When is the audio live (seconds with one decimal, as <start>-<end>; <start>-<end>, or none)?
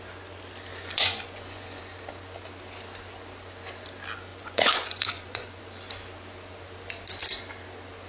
0.0-0.7; 1.8-4.3; 5.6-8.1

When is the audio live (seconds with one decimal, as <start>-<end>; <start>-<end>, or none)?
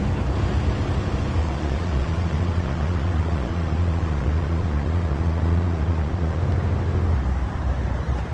0.0-1.4; 6.4-8.3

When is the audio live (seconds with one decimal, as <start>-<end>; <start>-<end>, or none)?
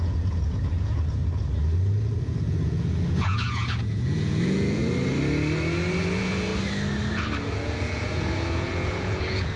1.2-2.2; 4.8-6.0; 6.5-7.5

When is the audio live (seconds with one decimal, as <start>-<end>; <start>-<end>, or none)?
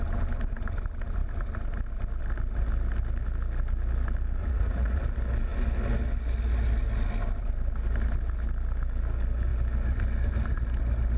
0.0-4.4; 5.0-11.2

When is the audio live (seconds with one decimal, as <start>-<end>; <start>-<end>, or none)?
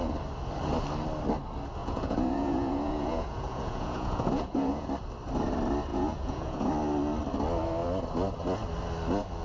0.0-1.8; 4.9-5.9; 6.7-9.4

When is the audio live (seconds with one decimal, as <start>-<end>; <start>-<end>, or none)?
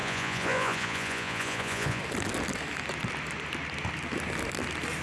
2.0-5.0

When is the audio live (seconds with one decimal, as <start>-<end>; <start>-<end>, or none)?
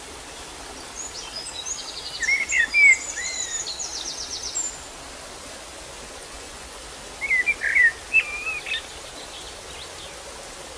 0.0-6.2; 6.8-10.8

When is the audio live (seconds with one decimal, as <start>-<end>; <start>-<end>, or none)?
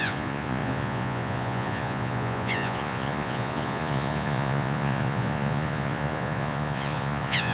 none